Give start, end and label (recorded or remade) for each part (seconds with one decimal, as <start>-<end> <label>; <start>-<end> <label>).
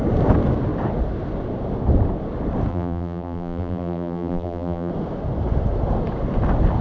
0.0-2.7 recorded; 2.7-4.9 remade; 4.9-6.8 recorded